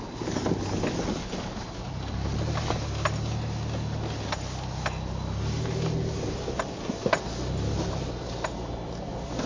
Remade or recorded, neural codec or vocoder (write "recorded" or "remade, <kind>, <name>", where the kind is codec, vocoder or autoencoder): recorded